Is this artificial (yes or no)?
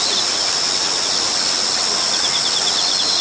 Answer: no